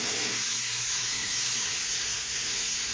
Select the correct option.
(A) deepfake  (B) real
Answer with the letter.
A